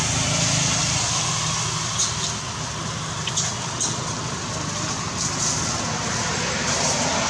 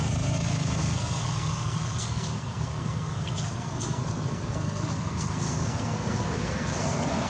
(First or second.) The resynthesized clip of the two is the second